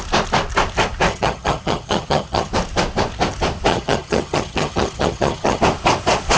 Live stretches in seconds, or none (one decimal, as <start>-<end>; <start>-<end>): 0.0-1.1; 2.5-3.7; 5.6-6.4